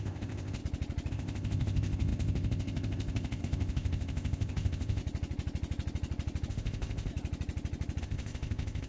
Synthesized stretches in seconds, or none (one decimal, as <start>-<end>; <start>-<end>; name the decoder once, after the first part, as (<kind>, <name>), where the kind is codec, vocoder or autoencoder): 0.0-0.6 (codec, ZipCodec); 1.1-5.0; 6.5-7.1; 8.0-8.9